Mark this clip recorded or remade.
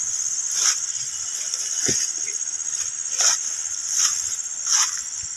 recorded